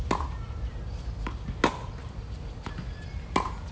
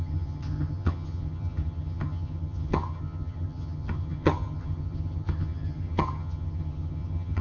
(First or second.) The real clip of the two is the first